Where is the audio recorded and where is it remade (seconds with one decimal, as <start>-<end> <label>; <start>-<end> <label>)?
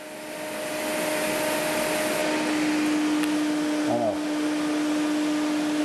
0.0-5.8 recorded